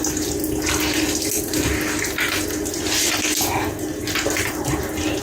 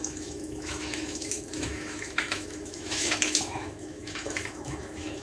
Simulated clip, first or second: second